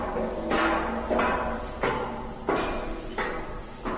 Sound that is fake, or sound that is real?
real